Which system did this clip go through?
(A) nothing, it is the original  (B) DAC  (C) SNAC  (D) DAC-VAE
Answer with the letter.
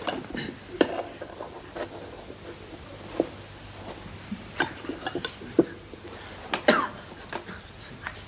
A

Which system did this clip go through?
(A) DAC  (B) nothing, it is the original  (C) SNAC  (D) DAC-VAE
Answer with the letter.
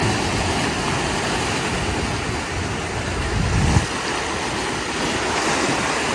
B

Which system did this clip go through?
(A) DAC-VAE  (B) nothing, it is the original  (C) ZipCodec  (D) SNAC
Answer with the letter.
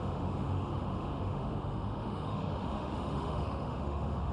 A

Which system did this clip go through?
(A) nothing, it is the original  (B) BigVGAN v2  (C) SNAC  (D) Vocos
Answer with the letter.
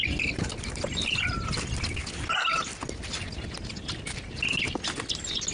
A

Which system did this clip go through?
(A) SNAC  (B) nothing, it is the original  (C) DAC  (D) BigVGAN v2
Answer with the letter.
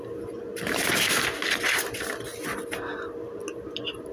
B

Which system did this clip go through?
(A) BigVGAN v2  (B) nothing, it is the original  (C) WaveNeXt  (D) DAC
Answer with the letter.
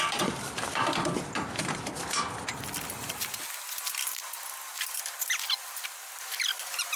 A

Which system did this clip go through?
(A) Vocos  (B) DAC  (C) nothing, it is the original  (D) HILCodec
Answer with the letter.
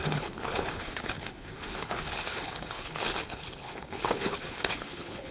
D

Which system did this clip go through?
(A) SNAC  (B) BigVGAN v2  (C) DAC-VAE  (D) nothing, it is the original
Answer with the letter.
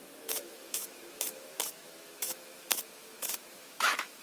C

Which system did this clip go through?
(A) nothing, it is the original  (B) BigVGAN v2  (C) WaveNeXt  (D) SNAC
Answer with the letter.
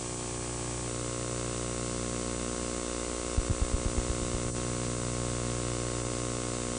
A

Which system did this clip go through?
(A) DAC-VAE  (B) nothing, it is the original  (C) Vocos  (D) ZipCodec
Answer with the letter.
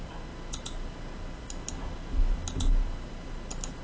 B